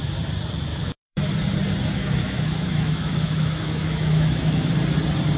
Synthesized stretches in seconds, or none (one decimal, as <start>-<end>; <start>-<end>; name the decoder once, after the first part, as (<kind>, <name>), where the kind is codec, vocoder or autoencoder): 0.7-1.2 (autoencoder, DAC-VAE); 2.0-4.7